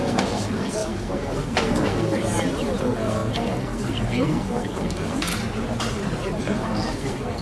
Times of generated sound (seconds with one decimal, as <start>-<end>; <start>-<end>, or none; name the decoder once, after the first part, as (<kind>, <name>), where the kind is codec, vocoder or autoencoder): 0.0-2.2 (codec, SNAC); 2.8-5.3; 6.4-7.4

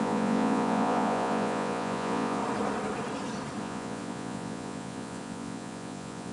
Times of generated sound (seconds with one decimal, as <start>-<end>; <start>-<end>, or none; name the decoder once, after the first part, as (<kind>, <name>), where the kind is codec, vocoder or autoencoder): 0.0-2.4 (vocoder, Vocos); 3.6-6.3

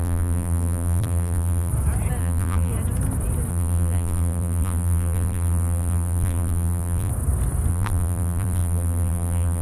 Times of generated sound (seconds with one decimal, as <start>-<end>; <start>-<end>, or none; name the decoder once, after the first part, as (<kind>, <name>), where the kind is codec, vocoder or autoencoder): 0.0-1.7 (vocoder, BigVGAN v2); 2.2-2.7; 3.5-7.1; 7.7-9.6

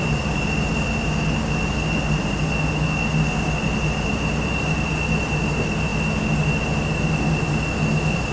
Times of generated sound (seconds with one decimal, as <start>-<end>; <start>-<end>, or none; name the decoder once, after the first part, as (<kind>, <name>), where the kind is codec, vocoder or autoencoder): none

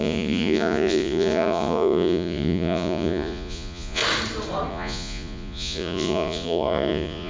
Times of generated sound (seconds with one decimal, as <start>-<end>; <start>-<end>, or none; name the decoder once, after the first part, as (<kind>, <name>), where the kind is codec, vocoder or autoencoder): 0.0-4.0 (vocoder, Vocos); 4.7-7.3

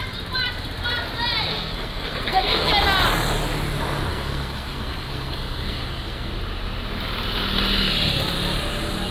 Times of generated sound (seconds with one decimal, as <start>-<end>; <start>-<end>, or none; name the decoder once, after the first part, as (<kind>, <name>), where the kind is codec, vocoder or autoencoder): 1.5-2.7 (codec, SNAC); 4.1-6.3

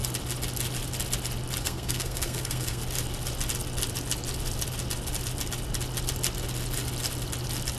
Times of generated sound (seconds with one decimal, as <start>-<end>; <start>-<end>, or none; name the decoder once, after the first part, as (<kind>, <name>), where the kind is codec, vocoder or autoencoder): 1.6-2.8 (codec, SNAC)

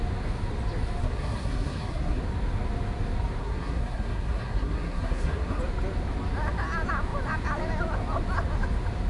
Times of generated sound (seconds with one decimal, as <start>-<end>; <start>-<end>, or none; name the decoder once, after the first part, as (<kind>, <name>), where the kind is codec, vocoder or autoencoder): 1.0-2.2 (codec, SNAC); 3.4-5.6